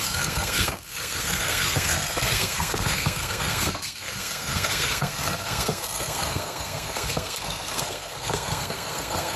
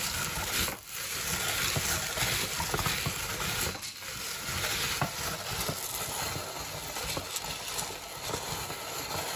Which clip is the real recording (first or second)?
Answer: second